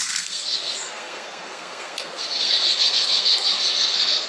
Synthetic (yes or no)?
yes